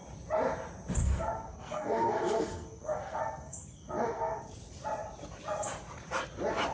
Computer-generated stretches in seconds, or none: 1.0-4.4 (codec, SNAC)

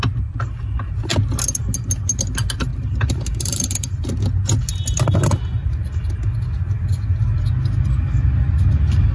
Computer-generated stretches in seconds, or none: 2.7-4.1 (vocoder, BigVGAN v2)

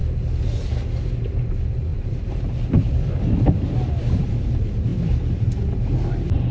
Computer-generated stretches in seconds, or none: 1.9-4.3 (vocoder, BigVGAN v2); 4.9-5.8

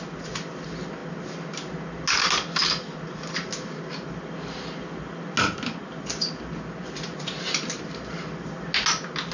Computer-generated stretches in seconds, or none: none

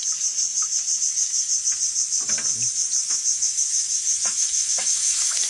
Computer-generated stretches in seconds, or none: 3.0-5.5 (autoencoder, DAC-VAE)

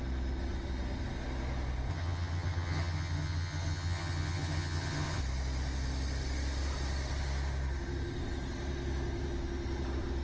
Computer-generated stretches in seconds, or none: 1.9-5.2 (vocoder, HiFi-GAN)

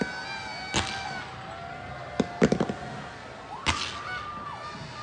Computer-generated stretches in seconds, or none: none

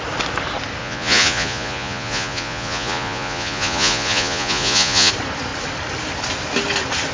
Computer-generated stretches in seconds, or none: 0.8-5.1 (vocoder, Vocos)